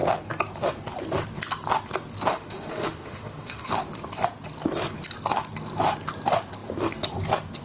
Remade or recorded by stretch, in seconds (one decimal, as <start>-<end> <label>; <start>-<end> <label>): 0.0-2.3 recorded; 2.3-3.7 remade; 3.7-7.6 recorded